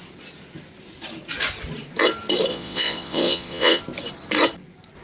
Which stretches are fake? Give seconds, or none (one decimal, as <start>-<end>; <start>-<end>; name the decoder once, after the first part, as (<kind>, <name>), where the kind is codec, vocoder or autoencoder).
2.5-3.8 (vocoder, Vocos)